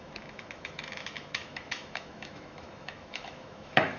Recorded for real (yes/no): no